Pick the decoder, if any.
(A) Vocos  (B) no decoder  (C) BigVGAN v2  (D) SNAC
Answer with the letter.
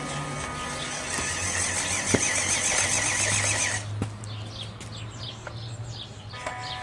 B